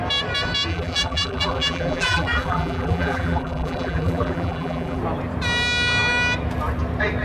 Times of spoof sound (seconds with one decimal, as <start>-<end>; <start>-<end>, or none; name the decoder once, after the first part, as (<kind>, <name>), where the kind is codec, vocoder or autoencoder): 0.7-5.0 (vocoder, BigVGAN v2)